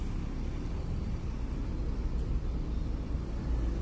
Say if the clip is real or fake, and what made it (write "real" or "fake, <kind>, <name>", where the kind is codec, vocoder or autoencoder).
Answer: real